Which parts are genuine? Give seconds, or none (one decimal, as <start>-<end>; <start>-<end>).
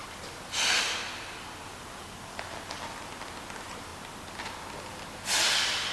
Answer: 0.0-5.9